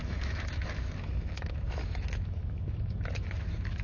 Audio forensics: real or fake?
fake